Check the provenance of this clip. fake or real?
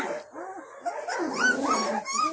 real